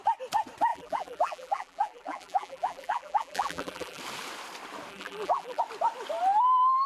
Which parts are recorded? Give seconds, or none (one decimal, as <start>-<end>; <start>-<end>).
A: 0.0-0.7; 4.0-4.9; 5.6-6.9